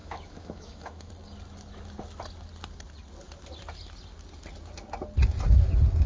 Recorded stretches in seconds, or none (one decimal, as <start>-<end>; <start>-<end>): 1.1-6.1

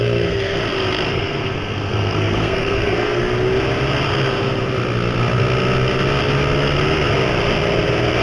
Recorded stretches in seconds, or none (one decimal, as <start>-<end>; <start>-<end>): 0.6-1.1; 3.2-8.2

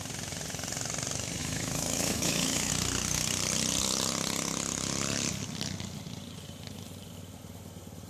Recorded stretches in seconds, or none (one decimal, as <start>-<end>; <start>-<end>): 0.0-1.4; 2.7-8.1

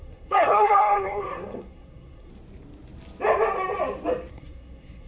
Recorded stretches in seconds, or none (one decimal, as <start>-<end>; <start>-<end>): 2.3-4.3

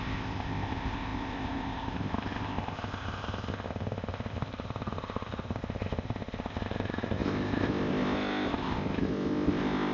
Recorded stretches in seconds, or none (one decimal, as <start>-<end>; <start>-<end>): none